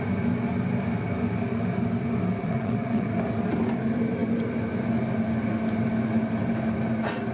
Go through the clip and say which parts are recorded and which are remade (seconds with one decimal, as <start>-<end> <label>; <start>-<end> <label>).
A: 0.0-2.4 recorded; 2.4-3.1 remade; 3.1-7.3 recorded